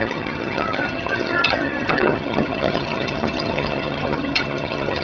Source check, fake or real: fake